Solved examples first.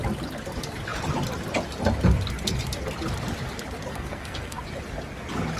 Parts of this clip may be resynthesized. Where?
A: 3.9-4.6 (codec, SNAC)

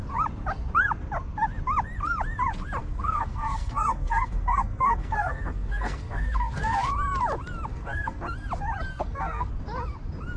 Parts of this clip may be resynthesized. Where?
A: 2.8-6.9 (codec, SNAC); 7.7-8.2; 8.9-9.5